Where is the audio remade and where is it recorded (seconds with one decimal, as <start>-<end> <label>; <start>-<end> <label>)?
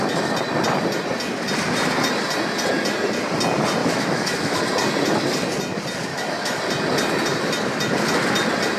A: 0.0-3.8 recorded; 3.8-4.6 remade; 4.6-6.1 recorded; 6.1-6.6 remade; 6.6-8.8 recorded